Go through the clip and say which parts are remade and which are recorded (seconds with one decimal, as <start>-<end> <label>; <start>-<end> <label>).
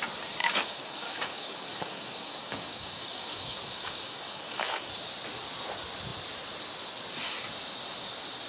0.0-0.4 recorded; 0.4-4.9 remade; 4.9-8.5 recorded